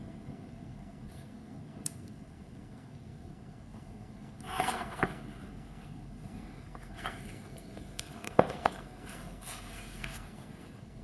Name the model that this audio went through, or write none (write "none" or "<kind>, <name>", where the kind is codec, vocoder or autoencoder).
codec, SNAC